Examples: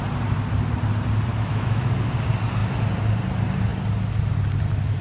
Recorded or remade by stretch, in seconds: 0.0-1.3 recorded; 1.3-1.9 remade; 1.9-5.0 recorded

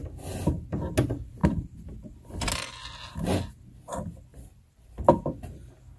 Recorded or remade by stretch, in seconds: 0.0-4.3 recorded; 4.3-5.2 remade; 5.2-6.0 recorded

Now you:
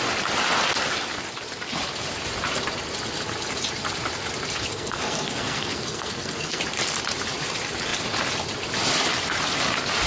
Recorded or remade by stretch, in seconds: 0.0-4.7 recorded; 4.7-6.6 remade; 6.6-10.1 recorded

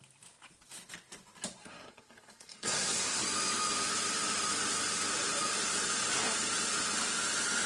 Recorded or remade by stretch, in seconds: 0.0-1.6 recorded; 1.6-3.2 remade; 3.2-7.7 recorded

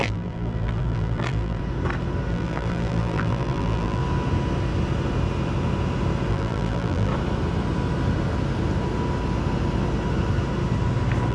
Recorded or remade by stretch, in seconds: 0.0-1.6 remade; 1.6-2.3 recorded; 2.3-4.0 remade; 4.0-6.3 recorded; 6.3-7.1 remade; 7.1-11.3 recorded